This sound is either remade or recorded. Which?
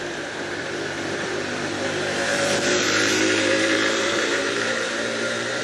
remade